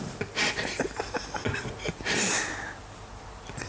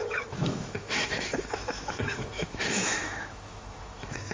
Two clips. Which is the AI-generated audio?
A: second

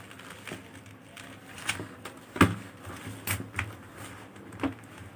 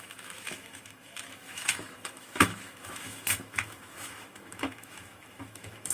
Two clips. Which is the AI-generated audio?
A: second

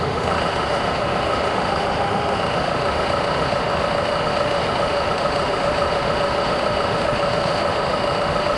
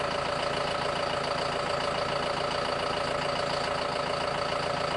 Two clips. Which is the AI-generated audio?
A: first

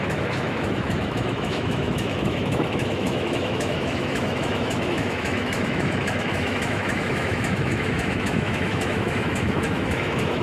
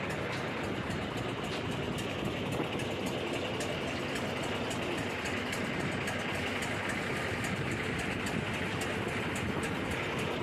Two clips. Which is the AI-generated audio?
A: first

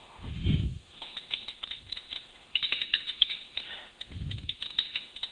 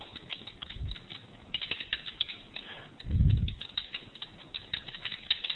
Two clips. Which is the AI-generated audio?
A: first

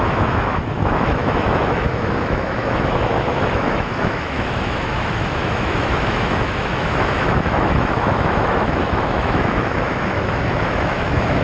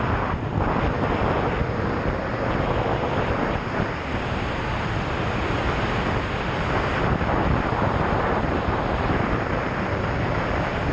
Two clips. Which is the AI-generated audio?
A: first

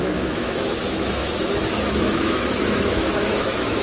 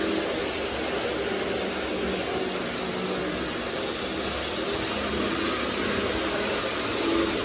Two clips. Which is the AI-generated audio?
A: first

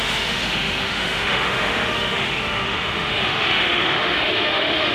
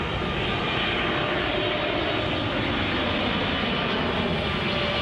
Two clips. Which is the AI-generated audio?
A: first